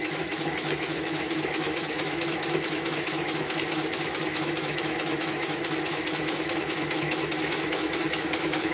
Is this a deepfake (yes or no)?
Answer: yes